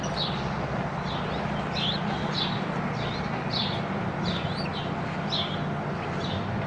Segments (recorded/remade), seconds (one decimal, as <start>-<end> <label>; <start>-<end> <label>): 0.0-6.2 recorded; 6.2-6.7 remade